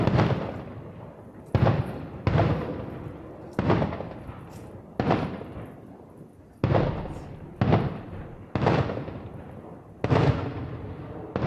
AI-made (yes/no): no